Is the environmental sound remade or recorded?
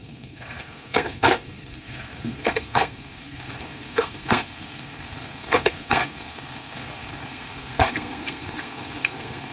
remade